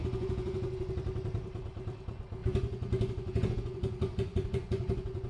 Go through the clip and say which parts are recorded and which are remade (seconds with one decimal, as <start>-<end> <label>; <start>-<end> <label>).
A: 0.0-0.9 remade; 0.9-2.4 recorded; 2.4-5.3 remade